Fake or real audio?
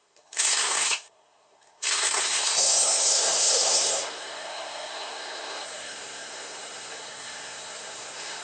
fake